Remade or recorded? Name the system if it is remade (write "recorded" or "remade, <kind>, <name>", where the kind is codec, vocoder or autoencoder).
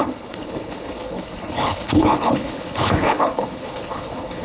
remade, codec, HILCodec